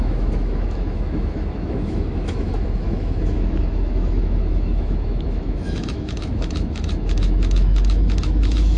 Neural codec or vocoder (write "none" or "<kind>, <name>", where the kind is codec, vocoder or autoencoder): autoencoder, DAC-VAE